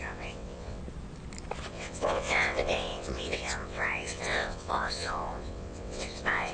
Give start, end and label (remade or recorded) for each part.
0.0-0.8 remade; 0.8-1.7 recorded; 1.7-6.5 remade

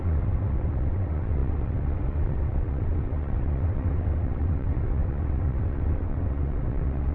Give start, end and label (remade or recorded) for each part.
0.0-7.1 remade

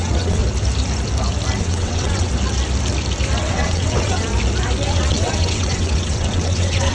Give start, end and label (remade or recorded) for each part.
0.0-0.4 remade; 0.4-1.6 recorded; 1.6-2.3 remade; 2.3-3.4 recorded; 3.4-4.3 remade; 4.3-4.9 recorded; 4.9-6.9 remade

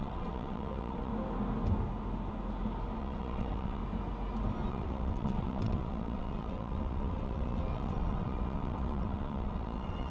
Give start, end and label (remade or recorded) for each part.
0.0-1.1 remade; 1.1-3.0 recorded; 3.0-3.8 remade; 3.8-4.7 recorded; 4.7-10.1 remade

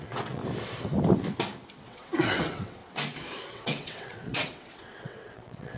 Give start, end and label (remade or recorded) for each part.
0.0-0.4 remade; 0.4-1.7 recorded; 1.7-2.8 remade; 2.8-3.5 recorded; 3.5-5.8 remade

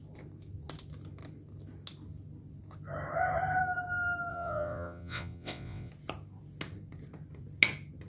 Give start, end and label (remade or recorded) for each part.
0.0-4.3 recorded; 4.3-5.9 remade; 5.9-8.1 recorded